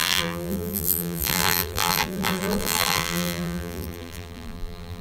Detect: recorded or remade remade